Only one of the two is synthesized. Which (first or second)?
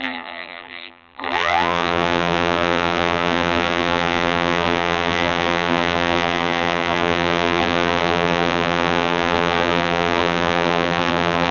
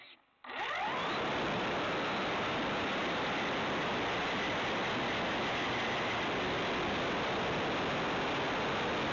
first